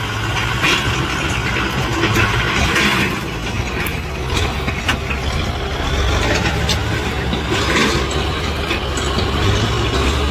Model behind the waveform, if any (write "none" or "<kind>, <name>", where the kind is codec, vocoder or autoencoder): none